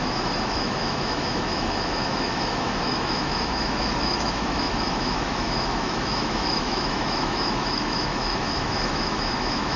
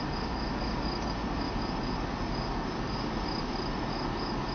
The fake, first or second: first